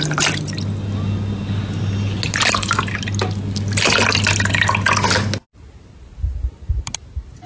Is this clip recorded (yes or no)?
yes